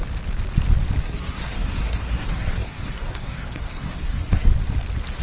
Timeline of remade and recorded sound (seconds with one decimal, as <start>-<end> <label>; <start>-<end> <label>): 0.0-1.0 recorded; 1.0-4.5 remade; 4.5-5.2 recorded